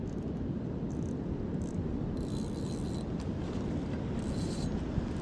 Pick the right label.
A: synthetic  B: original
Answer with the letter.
B